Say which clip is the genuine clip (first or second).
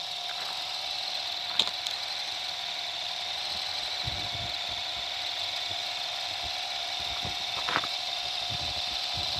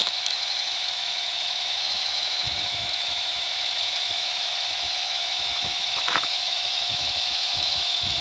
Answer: first